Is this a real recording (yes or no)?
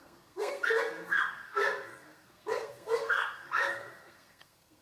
no